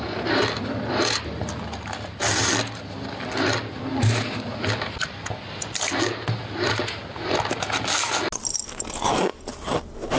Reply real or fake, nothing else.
real